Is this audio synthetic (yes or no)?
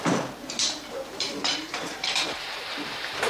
yes